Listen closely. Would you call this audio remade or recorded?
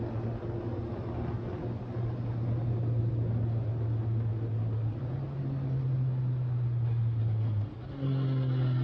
recorded